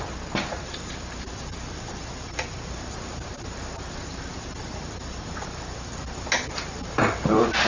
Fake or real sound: real